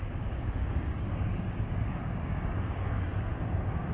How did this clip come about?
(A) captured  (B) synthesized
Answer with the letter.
B